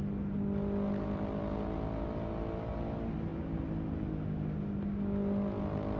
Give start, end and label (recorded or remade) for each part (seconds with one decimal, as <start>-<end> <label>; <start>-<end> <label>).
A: 0.0-6.0 recorded